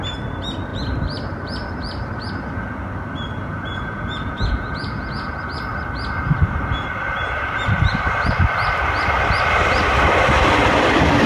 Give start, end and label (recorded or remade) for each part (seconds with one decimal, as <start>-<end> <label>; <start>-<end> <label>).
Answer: 0.0-3.4 recorded; 3.4-5.3 remade; 5.3-11.3 recorded